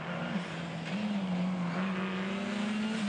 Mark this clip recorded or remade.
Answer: recorded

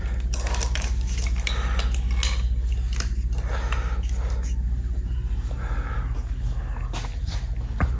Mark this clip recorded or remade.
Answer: recorded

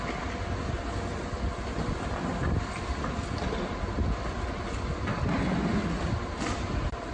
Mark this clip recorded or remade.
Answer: recorded